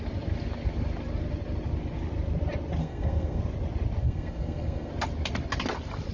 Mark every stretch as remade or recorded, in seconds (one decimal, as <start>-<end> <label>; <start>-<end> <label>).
0.0-2.8 recorded; 2.8-3.4 remade; 3.4-4.0 recorded; 4.0-4.9 remade; 4.9-6.1 recorded